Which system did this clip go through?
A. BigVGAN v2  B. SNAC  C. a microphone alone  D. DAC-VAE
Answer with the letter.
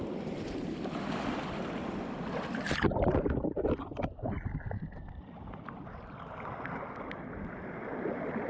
C